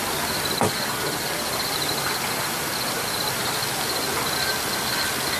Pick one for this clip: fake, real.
real